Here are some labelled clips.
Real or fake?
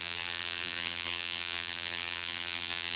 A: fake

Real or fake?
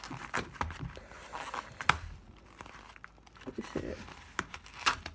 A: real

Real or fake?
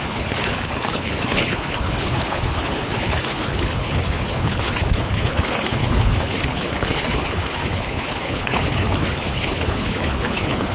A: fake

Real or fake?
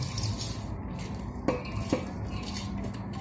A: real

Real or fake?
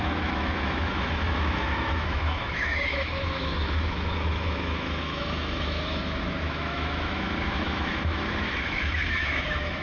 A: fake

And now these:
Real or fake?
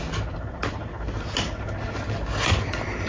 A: real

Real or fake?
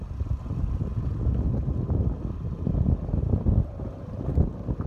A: real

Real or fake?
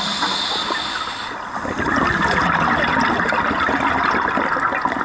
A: real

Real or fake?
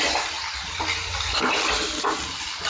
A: real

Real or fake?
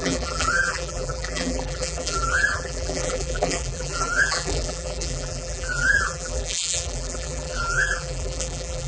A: fake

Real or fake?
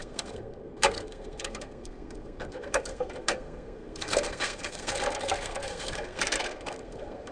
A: fake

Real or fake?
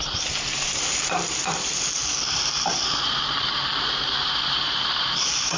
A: fake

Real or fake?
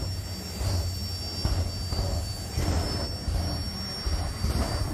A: real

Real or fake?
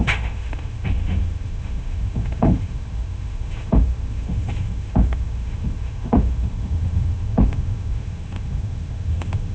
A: fake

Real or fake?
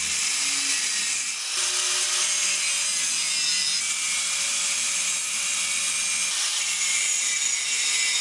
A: real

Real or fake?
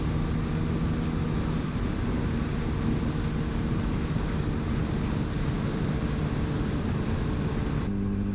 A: real